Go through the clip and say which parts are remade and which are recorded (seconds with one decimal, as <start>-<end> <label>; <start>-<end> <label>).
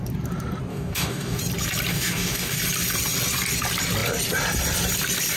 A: 0.0-0.7 recorded; 0.7-1.4 remade; 1.4-1.9 recorded; 1.9-2.6 remade; 2.6-5.4 recorded